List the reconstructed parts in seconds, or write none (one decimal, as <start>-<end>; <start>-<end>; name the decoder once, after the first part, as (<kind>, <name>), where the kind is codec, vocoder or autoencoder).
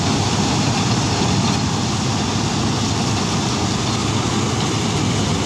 none